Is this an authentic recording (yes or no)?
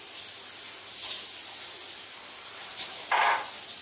yes